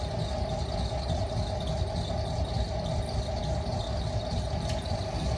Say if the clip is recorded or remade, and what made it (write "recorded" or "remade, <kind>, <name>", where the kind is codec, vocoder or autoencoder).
recorded